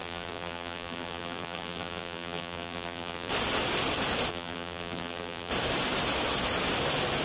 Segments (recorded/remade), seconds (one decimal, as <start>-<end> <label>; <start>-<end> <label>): 0.0-3.3 remade; 3.3-4.3 recorded; 4.3-5.5 remade; 5.5-7.2 recorded